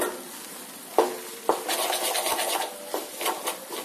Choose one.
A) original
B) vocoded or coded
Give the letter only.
A